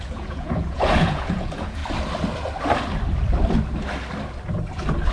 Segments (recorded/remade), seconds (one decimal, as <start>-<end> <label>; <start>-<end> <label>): 0.0-1.8 remade; 1.8-5.1 recorded

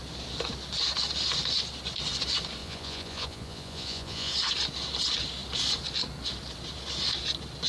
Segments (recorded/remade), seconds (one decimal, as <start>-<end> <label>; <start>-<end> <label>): 0.0-2.6 recorded; 2.6-4.3 remade; 4.3-7.7 recorded

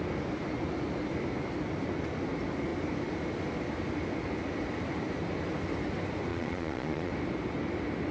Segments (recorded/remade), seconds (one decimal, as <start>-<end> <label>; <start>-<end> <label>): 0.0-6.3 recorded; 6.3-7.1 remade; 7.1-8.1 recorded